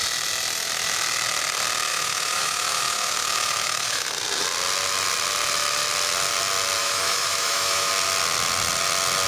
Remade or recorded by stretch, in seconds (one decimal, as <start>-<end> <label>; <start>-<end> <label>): 0.0-1.9 recorded; 1.9-4.1 remade; 4.1-6.8 recorded; 6.8-7.9 remade; 7.9-9.3 recorded